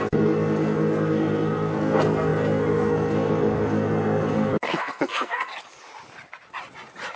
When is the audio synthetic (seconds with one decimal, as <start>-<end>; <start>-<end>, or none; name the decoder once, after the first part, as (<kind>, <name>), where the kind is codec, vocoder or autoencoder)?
0.0-5.5 (codec, SNAC)